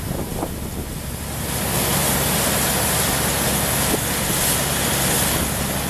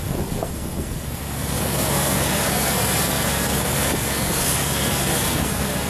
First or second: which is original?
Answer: first